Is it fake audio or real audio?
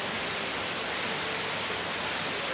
real